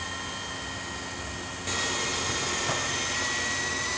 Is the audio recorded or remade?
recorded